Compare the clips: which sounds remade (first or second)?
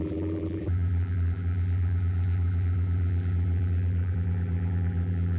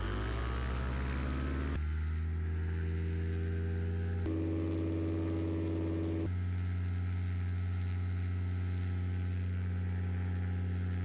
first